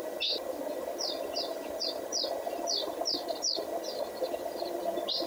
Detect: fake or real real